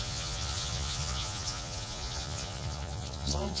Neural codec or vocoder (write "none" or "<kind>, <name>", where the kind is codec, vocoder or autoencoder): vocoder, Vocos